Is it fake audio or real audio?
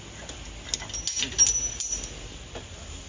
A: real